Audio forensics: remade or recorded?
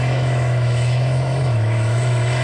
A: remade